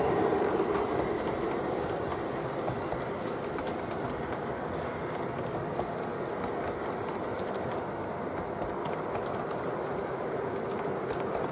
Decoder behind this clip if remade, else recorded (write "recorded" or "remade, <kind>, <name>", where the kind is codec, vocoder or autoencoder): recorded